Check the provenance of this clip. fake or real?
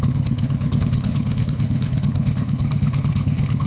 fake